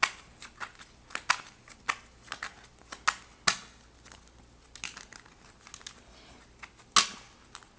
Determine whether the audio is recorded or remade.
recorded